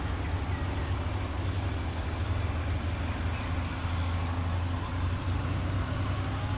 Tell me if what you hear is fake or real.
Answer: real